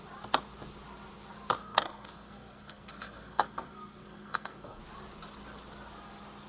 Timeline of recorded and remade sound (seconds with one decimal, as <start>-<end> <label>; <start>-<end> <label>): 0.0-1.6 recorded; 1.6-4.8 remade; 4.8-6.5 recorded